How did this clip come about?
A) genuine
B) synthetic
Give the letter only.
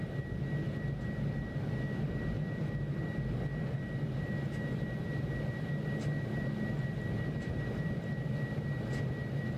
A